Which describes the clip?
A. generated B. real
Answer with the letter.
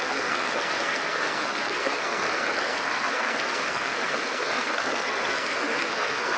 A